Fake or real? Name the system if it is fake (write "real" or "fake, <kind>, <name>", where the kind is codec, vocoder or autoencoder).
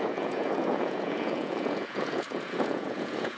fake, vocoder, Vocos